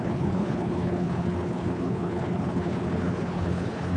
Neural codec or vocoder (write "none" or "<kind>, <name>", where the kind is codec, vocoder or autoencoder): codec, HILCodec